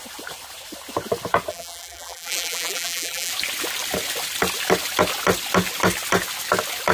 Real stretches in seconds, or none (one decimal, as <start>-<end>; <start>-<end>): 0.0-1.5; 3.3-6.9